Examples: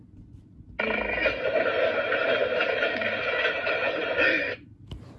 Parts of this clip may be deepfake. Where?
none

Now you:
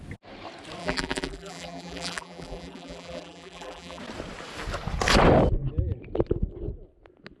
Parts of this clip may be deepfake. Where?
0.8-4.0 (vocoder, BigVGAN v2)

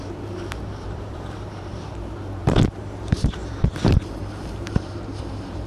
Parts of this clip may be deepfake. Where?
0.0-5.7 (vocoder, BigVGAN v2)

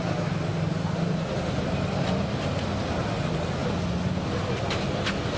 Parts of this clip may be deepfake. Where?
none

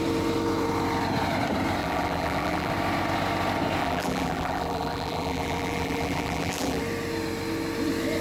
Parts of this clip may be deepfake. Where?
1.8-2.7 (vocoder, BigVGAN v2); 3.8-6.8

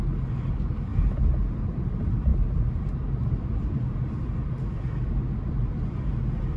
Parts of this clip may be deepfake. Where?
none

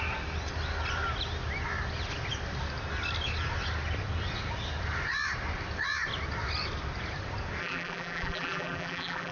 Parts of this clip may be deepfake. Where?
7.6-9.3 (vocoder, BigVGAN v2)